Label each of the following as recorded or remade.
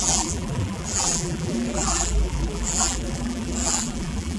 remade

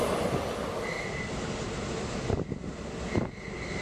recorded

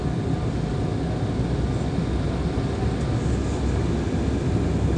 recorded